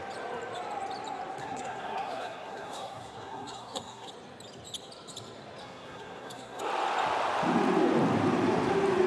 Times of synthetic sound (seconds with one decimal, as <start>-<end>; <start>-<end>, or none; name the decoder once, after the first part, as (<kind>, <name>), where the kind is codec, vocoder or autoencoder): 1.4-4.1 (codec, SNAC); 5.6-6.6